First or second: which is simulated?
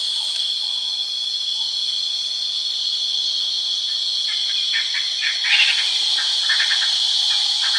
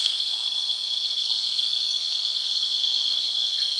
second